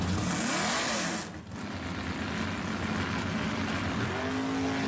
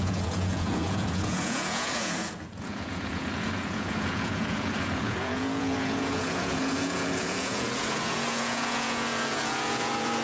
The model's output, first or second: second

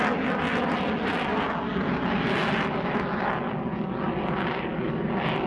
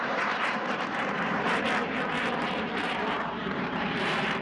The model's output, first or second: second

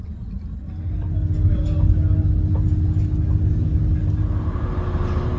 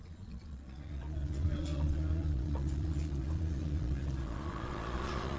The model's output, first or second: second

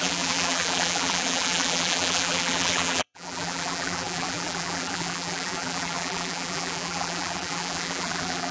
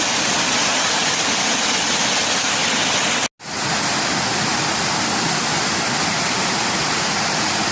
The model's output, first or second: first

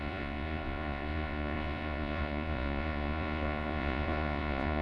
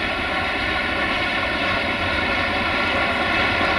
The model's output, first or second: first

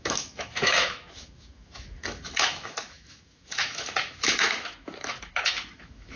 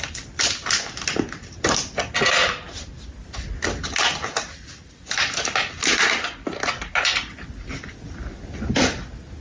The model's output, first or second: first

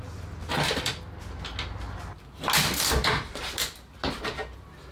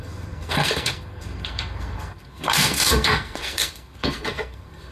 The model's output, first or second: second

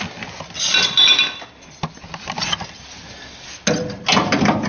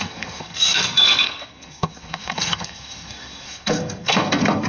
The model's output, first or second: second